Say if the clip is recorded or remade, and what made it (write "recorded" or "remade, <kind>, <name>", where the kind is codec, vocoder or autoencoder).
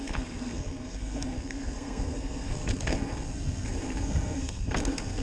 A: remade, codec, SNAC